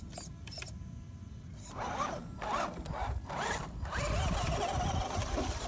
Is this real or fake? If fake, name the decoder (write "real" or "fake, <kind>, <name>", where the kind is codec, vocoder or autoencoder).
real